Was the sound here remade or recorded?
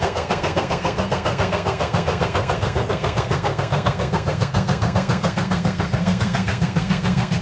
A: remade